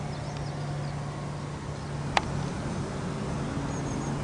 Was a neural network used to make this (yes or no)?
no